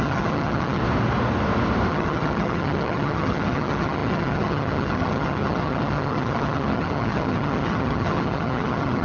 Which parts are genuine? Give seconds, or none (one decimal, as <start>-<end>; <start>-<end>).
0.8-1.9